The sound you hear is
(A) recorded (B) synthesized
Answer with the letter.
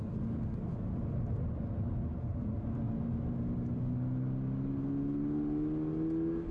A